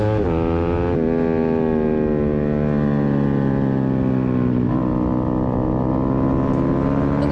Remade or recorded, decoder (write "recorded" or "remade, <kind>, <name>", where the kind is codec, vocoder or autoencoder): recorded